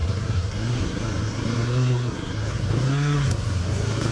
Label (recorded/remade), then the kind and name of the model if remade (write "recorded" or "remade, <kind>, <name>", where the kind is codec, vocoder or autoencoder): remade, codec, SNAC